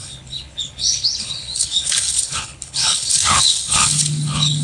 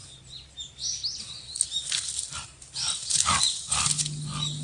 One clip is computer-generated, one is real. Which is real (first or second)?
second